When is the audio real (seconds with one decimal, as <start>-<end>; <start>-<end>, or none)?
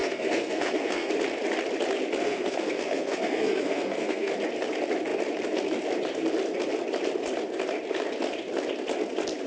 1.1-2.2; 4.3-9.5